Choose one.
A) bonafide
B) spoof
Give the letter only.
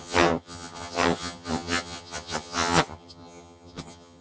B